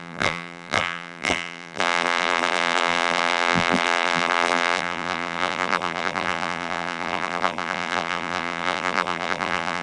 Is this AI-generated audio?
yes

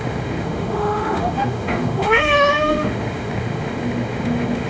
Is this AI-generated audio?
yes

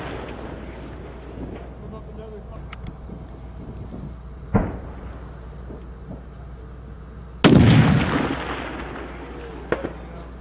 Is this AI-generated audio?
no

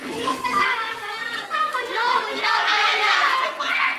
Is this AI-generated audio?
yes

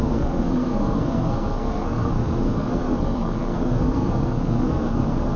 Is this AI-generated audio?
yes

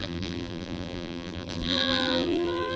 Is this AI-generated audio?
yes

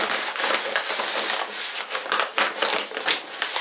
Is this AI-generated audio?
no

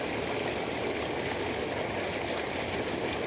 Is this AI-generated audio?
no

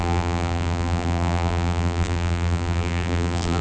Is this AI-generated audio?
yes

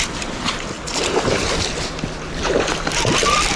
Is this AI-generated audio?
no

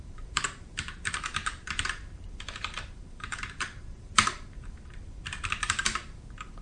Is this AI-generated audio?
yes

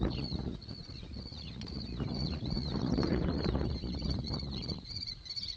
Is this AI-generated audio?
yes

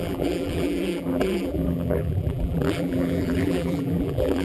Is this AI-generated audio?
yes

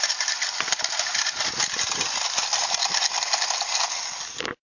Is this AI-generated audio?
no